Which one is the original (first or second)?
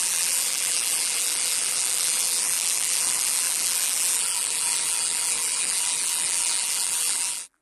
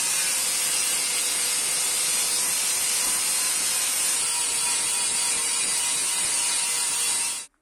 second